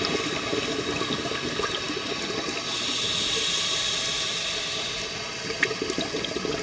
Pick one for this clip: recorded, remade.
recorded